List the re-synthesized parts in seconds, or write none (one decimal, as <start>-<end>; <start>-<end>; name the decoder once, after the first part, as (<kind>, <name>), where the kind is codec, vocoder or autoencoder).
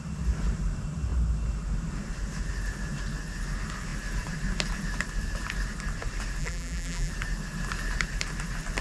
6.4-7.1 (vocoder, BigVGAN v2)